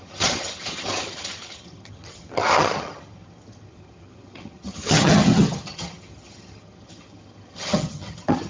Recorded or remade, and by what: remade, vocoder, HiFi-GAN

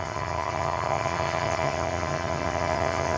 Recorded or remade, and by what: remade, vocoder, HiFi-GAN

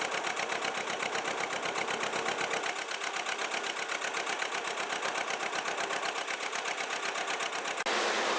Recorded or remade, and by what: recorded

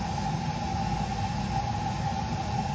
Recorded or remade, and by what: recorded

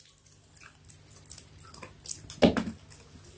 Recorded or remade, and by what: recorded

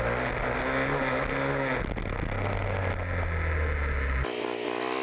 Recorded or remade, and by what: recorded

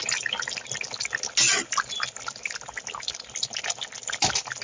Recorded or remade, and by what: recorded